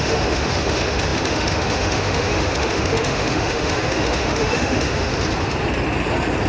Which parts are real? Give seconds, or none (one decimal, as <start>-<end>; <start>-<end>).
5.1-6.5